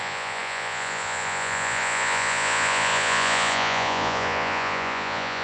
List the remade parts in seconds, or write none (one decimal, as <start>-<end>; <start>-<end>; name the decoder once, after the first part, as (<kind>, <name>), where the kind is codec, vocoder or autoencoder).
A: 0.0-5.4 (vocoder, Vocos)